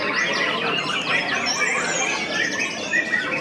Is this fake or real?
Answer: real